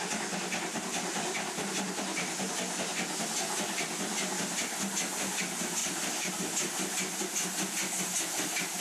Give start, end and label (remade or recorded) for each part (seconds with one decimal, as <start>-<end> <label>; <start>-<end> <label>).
0.0-0.9 recorded; 0.9-2.9 remade; 2.9-5.8 recorded; 5.8-6.3 remade; 6.3-8.8 recorded